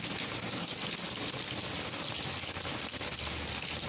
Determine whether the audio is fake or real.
real